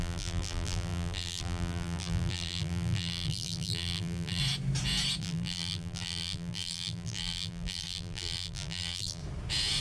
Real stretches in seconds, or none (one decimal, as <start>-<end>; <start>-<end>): 4.4-5.2; 9.2-9.8